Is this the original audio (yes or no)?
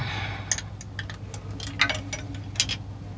yes